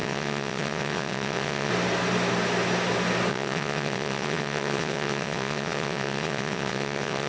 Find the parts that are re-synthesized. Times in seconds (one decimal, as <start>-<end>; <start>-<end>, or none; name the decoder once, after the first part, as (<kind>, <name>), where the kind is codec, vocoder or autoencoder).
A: 0.0-1.7 (vocoder, WaveNeXt); 3.3-7.3